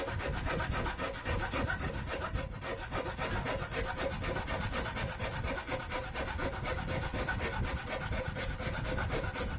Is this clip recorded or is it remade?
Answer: recorded